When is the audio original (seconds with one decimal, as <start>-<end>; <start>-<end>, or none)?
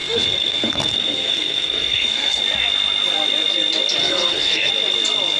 2.4-4.0; 4.7-5.4